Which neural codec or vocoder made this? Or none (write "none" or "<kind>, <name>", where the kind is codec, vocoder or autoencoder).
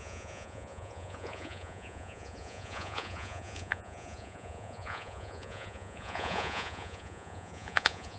vocoder, Vocos